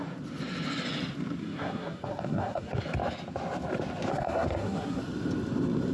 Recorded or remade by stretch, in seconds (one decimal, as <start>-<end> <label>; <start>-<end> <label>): 0.0-1.4 recorded; 1.4-2.8 remade; 2.8-4.1 recorded; 4.1-5.0 remade; 5.0-5.9 recorded